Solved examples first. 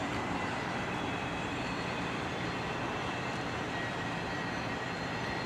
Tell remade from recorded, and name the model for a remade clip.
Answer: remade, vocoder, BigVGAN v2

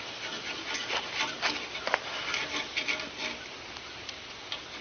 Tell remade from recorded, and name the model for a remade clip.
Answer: recorded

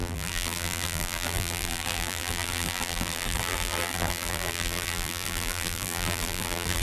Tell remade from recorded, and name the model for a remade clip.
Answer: remade, vocoder, BigVGAN v2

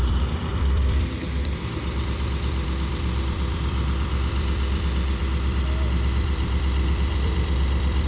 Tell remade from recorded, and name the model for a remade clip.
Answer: remade, vocoder, BigVGAN v2